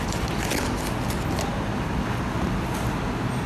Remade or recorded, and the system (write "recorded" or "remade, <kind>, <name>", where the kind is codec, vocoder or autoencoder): recorded